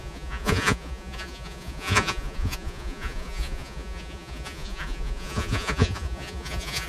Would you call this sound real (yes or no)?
no